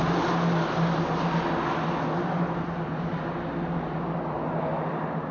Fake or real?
real